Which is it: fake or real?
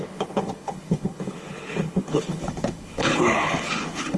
fake